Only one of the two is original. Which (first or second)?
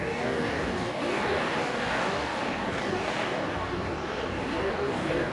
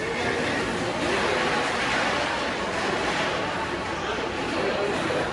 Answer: second